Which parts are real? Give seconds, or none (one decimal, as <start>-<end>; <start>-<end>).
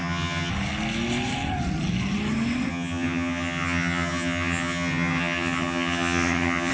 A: 0.5-2.7